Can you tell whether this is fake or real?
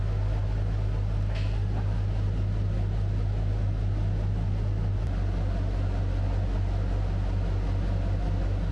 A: real